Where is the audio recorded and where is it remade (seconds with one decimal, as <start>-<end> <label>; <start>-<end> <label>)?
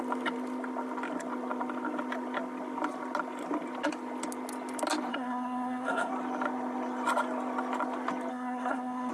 0.0-5.1 recorded; 5.1-6.1 remade; 6.1-8.3 recorded; 8.3-9.1 remade